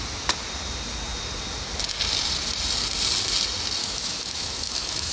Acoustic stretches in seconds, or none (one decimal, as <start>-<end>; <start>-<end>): 0.0-3.8